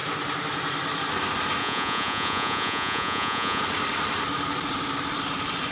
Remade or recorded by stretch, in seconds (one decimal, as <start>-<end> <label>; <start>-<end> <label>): 0.0-1.6 recorded; 1.6-3.6 remade; 3.6-5.7 recorded